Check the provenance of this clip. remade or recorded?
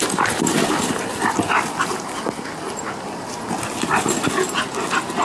recorded